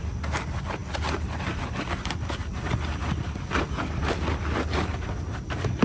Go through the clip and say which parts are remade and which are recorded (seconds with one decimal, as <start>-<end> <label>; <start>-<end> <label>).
0.0-5.8 recorded

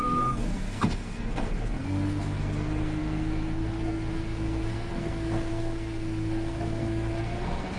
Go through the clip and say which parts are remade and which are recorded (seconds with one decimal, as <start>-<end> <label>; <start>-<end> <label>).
0.0-7.8 remade

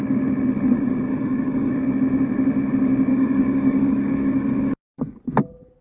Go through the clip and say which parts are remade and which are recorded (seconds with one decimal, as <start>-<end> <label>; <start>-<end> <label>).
0.0-1.1 recorded; 1.1-1.7 remade; 1.7-3.1 recorded; 3.1-5.2 remade; 5.2-5.8 recorded

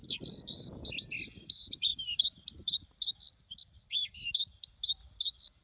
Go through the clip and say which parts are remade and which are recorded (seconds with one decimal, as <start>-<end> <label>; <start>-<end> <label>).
0.0-0.7 remade; 0.7-1.9 recorded; 1.9-2.8 remade; 2.8-5.6 recorded